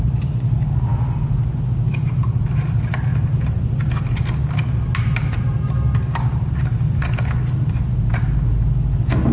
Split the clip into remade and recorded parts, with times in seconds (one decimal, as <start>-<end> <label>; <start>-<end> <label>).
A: 0.0-9.3 recorded